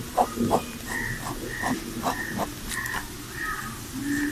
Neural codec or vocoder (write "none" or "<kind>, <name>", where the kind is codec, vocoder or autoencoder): none